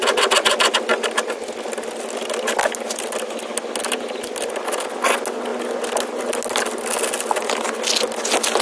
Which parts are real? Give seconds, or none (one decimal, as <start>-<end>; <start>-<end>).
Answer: 0.0-8.6